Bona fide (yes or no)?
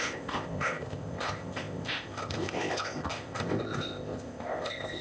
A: no